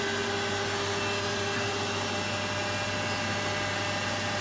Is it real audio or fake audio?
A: real